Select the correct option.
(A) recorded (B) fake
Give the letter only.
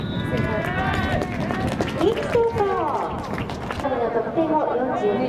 A